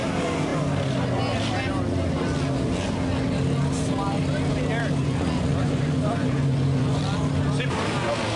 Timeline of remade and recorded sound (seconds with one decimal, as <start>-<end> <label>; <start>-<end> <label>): 0.0-5.0 recorded; 5.0-7.0 remade; 7.0-8.4 recorded